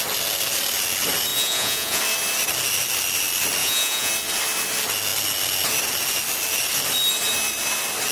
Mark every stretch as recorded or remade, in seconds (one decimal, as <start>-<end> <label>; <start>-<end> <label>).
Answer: 0.0-1.3 recorded; 1.3-2.0 remade; 2.0-3.6 recorded; 3.6-4.1 remade; 4.1-8.1 recorded